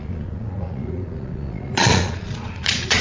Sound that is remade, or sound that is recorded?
remade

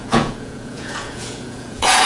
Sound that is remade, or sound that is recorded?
remade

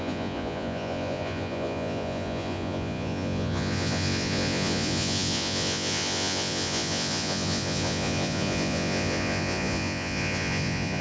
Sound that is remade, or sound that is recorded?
remade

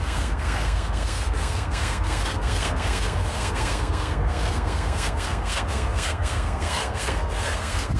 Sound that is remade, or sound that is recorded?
remade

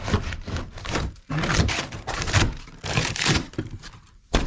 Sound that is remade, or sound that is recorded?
remade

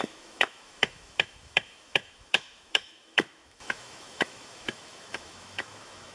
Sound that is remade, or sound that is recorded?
remade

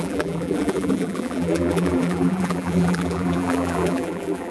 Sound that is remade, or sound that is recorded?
remade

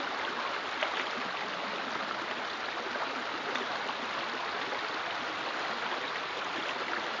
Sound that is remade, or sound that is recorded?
recorded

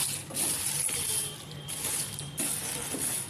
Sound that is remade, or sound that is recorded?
recorded